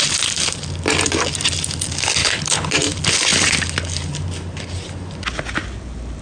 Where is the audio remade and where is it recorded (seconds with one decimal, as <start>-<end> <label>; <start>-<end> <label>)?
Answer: 0.0-2.2 recorded; 2.2-2.7 remade; 2.7-6.2 recorded